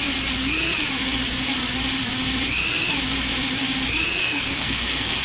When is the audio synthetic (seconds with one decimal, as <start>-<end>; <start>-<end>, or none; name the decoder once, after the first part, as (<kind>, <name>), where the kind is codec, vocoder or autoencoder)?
4.2-5.2 (codec, SNAC)